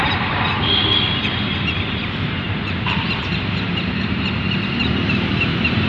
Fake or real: fake